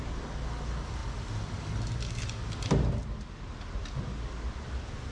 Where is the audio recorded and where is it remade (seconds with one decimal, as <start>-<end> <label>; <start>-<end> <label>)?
0.0-5.1 recorded